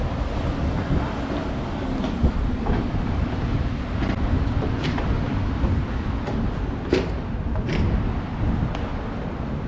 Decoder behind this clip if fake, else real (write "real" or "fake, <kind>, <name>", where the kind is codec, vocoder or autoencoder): real